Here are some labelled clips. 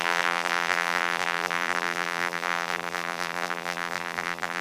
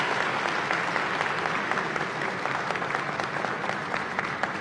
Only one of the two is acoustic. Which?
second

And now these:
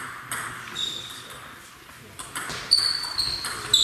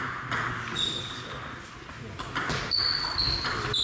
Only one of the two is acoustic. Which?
second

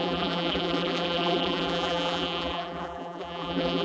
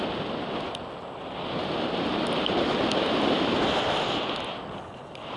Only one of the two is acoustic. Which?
second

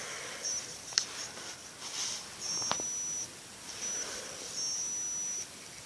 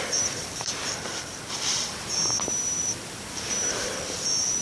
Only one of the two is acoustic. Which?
first